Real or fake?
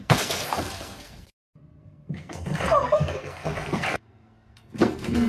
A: fake